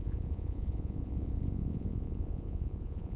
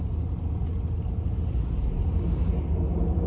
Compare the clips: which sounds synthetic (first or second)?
first